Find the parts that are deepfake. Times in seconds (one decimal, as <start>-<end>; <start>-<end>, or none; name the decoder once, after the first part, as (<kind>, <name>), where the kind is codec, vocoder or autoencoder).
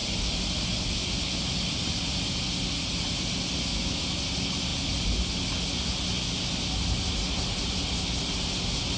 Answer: 3.7-4.2 (autoencoder, DAC-VAE)